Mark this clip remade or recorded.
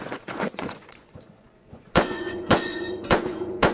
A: remade